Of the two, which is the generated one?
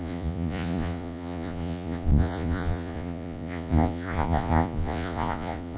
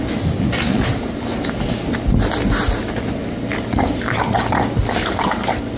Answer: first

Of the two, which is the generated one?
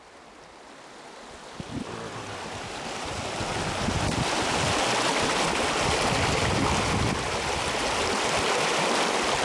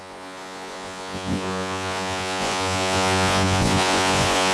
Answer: second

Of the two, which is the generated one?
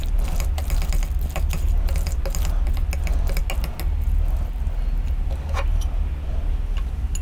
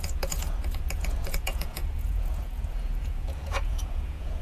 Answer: second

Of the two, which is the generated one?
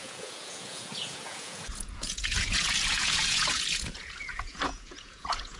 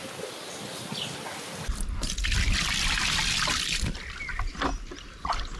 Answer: first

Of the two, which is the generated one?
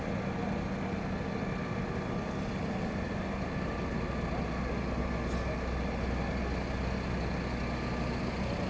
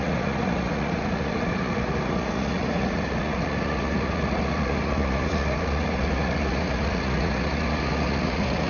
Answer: second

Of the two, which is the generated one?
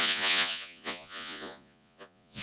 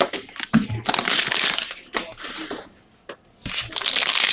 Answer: first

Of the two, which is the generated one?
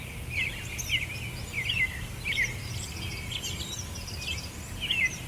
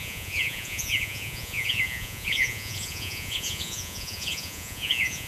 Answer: second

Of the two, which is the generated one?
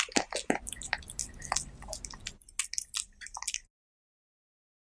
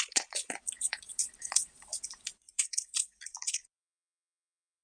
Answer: second